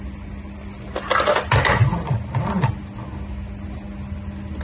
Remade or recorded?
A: recorded